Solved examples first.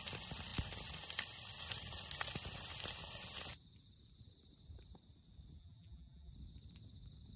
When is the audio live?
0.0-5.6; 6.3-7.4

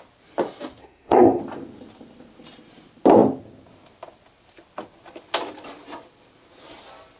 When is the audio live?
0.0-0.8; 1.4-7.2

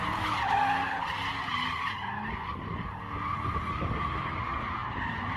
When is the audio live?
0.0-5.4

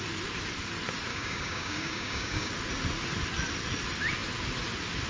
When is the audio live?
0.0-1.1; 2.5-5.1

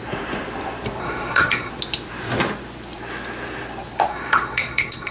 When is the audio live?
0.0-1.0; 1.7-4.1